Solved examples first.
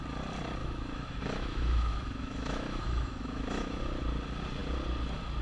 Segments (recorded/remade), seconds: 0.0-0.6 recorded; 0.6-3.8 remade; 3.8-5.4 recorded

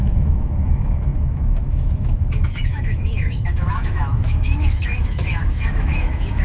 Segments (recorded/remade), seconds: 0.0-6.4 remade

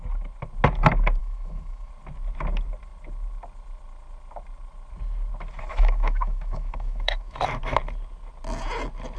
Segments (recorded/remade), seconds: 0.0-1.2 recorded; 1.2-1.9 remade; 1.9-5.7 recorded; 5.7-7.4 remade; 7.4-9.2 recorded

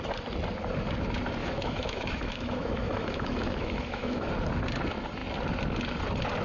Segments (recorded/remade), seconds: 0.0-1.4 recorded; 1.4-4.3 remade; 4.3-6.4 recorded

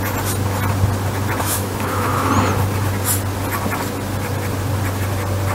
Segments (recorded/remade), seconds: 0.0-1.4 recorded; 1.4-2.3 remade; 2.3-5.5 recorded